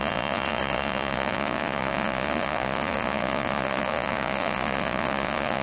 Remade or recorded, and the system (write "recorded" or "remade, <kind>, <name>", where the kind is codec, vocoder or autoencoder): remade, vocoder, Vocos